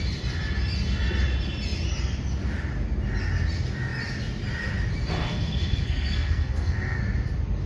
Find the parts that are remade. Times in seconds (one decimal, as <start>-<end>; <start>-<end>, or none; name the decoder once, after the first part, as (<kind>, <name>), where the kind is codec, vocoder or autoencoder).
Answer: 5.2-7.0 (codec, SNAC)